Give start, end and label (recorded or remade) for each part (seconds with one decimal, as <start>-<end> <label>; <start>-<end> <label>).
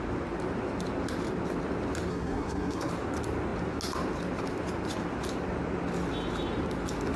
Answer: 0.0-2.1 recorded; 2.1-2.9 remade; 2.9-7.2 recorded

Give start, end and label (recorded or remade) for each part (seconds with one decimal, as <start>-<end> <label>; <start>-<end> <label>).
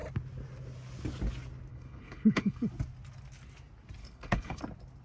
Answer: 0.0-1.7 recorded; 1.7-2.7 remade; 2.7-4.0 recorded; 4.0-4.6 remade; 4.6-5.0 recorded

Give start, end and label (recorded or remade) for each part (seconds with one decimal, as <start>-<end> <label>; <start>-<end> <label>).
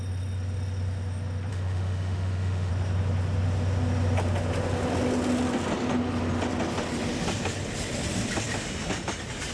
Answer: 0.0-1.5 recorded; 1.5-2.7 remade; 2.7-9.5 recorded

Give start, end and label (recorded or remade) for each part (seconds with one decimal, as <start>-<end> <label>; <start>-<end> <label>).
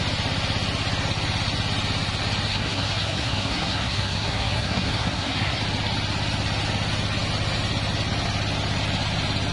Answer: 0.0-2.5 recorded; 2.5-5.6 remade; 5.6-9.5 recorded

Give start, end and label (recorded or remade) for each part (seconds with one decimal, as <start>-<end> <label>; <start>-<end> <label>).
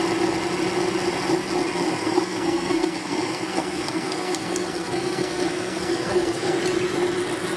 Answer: 0.0-2.0 recorded; 2.0-6.6 remade; 6.6-7.6 recorded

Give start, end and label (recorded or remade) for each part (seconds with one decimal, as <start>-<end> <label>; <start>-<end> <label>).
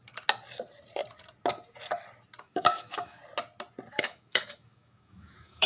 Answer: 0.0-2.4 recorded; 2.4-3.2 remade; 3.2-3.9 recorded; 3.9-5.7 remade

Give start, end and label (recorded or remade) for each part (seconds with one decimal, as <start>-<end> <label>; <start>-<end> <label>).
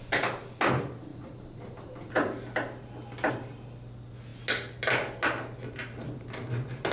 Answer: 0.0-1.1 recorded; 1.1-3.3 remade; 3.3-6.9 recorded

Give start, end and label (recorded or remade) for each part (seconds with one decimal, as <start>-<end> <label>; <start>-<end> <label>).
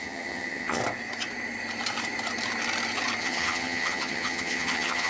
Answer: 0.0-0.8 remade; 0.8-3.2 recorded; 3.2-5.1 remade